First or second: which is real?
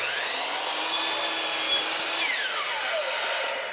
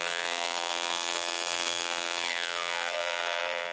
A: first